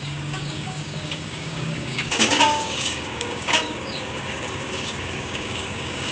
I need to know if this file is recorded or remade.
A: remade